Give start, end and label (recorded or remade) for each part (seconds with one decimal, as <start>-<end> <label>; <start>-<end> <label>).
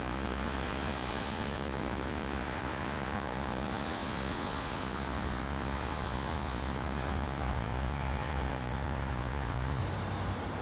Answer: 0.0-9.8 remade; 9.8-10.6 recorded